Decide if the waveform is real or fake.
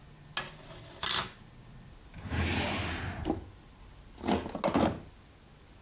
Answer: real